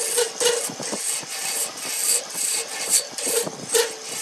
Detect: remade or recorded recorded